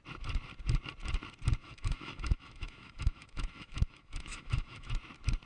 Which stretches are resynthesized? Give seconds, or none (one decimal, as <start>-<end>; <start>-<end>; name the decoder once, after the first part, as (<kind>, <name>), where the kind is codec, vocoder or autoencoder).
1.6-4.9 (autoencoder, DAC-VAE)